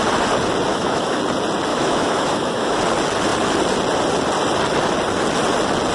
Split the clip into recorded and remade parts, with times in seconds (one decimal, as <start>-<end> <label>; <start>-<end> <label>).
0.0-0.7 recorded; 0.7-1.2 remade; 1.2-1.7 recorded; 1.7-2.8 remade; 2.8-5.9 recorded